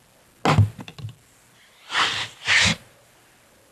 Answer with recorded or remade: recorded